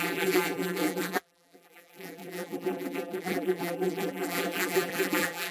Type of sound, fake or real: fake